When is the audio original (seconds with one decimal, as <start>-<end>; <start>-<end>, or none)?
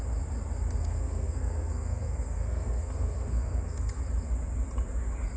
0.0-0.8; 4.0-5.4